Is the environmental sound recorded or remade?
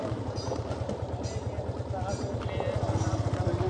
recorded